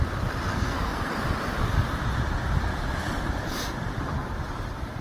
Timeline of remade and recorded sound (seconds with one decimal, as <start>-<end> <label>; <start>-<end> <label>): 0.0-0.5 recorded; 0.5-1.1 remade; 1.1-5.0 recorded